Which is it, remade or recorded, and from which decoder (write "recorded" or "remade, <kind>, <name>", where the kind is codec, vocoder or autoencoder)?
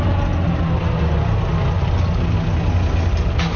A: recorded